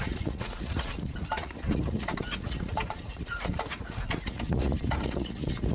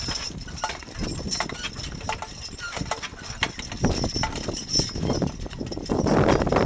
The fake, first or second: first